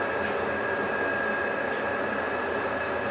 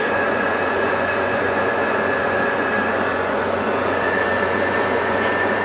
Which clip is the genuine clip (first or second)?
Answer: first